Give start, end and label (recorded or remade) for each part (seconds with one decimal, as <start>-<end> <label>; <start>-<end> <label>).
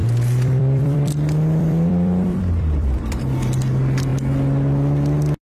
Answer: 0.0-3.2 remade; 3.2-5.4 recorded